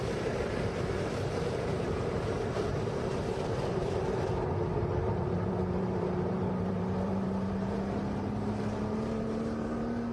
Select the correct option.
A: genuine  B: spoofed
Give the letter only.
B